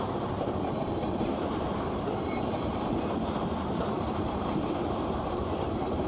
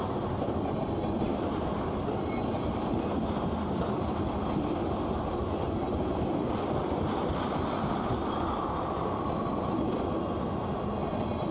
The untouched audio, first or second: second